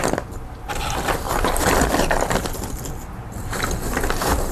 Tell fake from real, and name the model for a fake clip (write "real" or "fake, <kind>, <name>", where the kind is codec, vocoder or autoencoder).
real